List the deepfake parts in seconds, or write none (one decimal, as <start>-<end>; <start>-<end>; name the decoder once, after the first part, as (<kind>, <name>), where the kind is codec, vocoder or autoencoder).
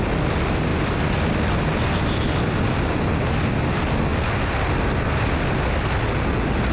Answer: none